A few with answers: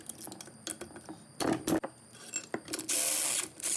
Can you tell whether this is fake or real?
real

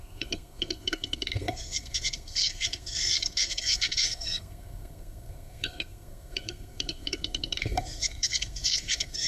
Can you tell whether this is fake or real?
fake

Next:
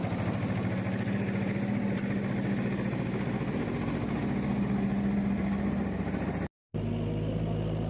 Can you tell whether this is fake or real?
real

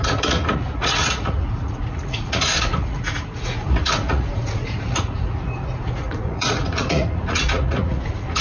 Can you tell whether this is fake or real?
fake